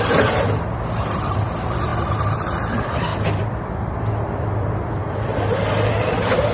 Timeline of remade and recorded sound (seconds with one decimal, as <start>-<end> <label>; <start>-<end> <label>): 0.0-6.5 remade